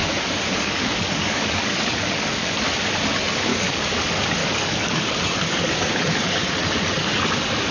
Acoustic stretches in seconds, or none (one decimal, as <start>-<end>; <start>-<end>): 2.5-3.5; 4.0-4.4; 6.5-7.7